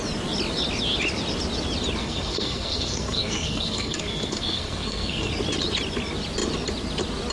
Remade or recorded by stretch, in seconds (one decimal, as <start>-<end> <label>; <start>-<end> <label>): 0.0-2.0 recorded; 2.0-5.3 remade; 5.3-7.3 recorded